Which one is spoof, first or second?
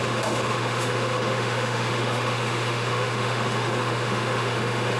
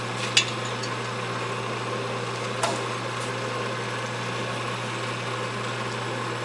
first